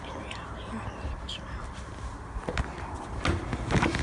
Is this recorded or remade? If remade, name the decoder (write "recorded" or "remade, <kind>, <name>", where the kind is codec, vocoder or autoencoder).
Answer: recorded